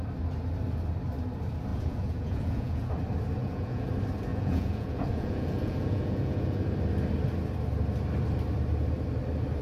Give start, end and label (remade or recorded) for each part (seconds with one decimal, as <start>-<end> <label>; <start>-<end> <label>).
0.0-1.7 recorded; 1.7-2.9 remade; 2.9-3.4 recorded; 3.4-3.9 remade; 3.9-4.3 recorded; 4.3-6.6 remade; 6.6-9.6 recorded